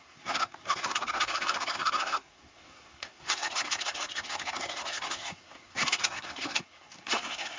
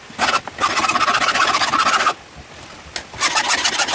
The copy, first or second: first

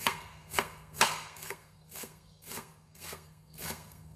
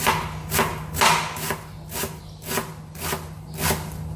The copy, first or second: first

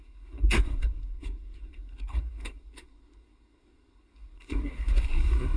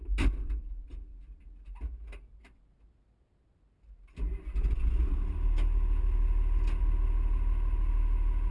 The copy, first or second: first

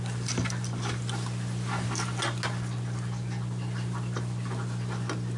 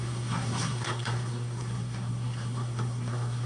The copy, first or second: second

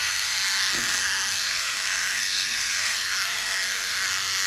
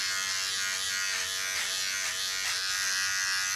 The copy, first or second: first